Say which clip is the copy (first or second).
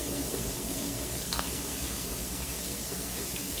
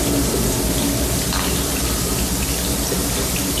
first